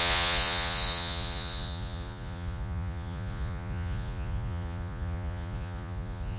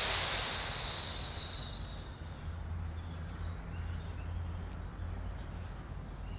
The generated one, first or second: first